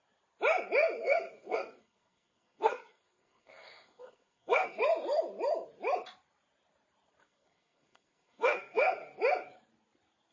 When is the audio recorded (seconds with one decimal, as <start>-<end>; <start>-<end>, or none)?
0.0-1.0; 4.8-7.2; 9.0-10.3